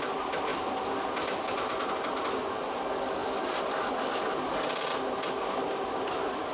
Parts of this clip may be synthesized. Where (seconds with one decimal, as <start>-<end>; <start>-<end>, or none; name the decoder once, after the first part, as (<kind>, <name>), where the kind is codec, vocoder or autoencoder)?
none